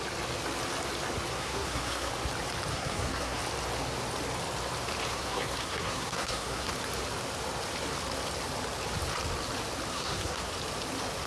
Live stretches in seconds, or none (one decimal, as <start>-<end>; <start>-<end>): 0.0-1.3; 2.1-2.7; 3.4-5.1; 6.7-9.9; 10.5-11.3